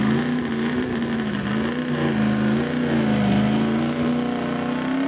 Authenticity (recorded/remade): recorded